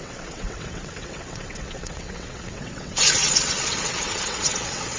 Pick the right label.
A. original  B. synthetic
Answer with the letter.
B